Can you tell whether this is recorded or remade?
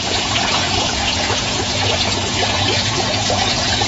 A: remade